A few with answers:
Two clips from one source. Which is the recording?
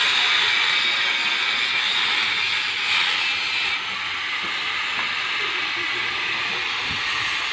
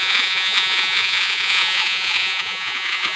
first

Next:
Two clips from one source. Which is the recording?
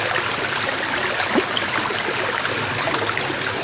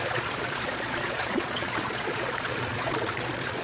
first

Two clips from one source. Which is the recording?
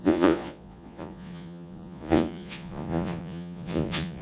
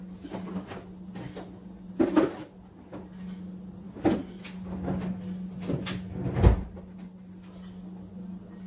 second